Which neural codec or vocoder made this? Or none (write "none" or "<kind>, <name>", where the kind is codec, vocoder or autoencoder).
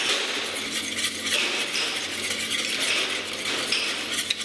none